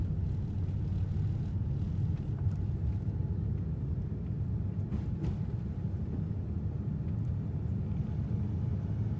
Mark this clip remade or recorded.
recorded